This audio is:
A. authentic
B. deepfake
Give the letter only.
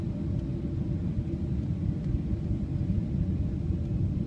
A